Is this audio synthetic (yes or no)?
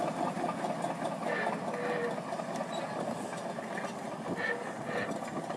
no